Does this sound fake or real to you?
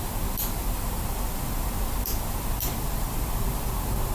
fake